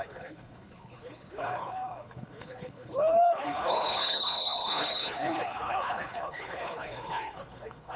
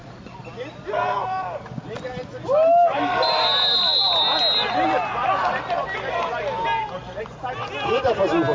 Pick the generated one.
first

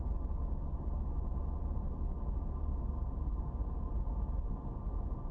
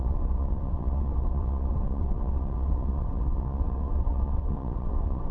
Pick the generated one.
second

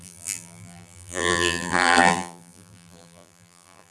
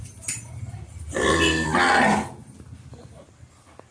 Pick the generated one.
first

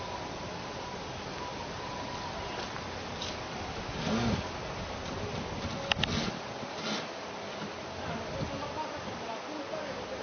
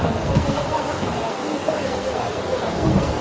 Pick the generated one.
second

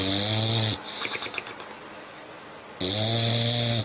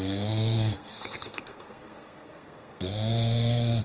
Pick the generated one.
second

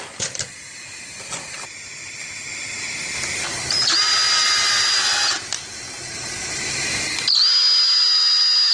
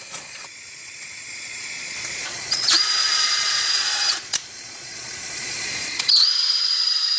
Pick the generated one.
second